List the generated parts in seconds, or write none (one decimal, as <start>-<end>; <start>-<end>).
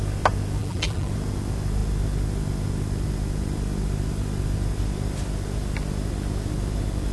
0.6-1.1